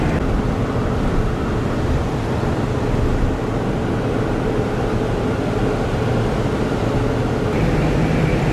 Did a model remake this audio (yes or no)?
no